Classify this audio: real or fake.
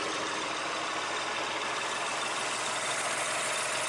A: real